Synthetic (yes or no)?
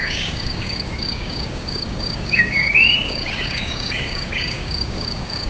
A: yes